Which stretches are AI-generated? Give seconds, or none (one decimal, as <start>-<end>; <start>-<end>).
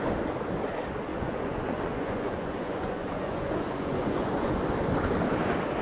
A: 1.1-4.6